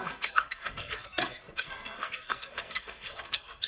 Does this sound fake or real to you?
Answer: fake